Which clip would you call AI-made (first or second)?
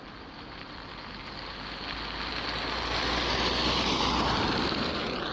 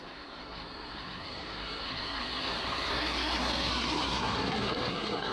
second